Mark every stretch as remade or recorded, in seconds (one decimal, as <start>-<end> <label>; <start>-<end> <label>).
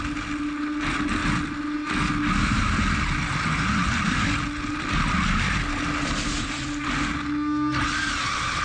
0.0-8.6 recorded